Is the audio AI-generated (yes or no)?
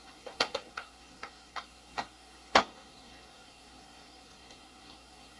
yes